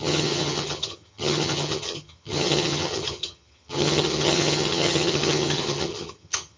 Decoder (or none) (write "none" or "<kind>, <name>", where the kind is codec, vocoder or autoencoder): vocoder, HiFi-GAN